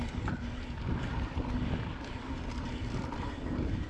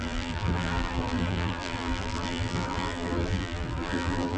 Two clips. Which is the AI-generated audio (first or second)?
second